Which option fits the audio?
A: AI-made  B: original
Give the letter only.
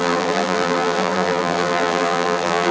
A